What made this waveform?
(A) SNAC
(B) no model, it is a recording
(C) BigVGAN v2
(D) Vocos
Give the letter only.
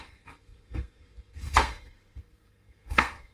A